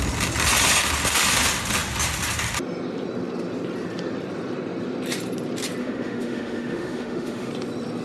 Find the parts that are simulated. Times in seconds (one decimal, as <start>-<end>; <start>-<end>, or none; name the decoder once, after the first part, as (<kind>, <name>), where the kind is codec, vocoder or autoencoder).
5.8-7.5 (autoencoder, DAC-VAE)